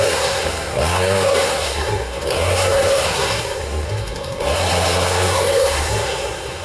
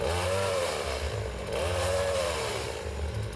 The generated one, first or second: first